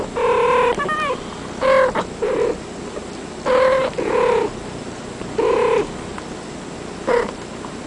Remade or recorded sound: recorded